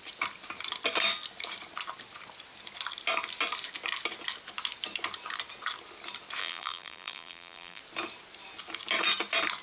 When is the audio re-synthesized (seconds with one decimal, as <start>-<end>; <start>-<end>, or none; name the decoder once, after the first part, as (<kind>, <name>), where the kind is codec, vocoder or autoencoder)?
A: 6.4-7.8 (vocoder, BigVGAN v2)